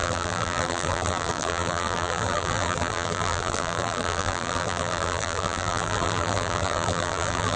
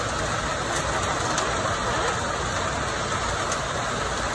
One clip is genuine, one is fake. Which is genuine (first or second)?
second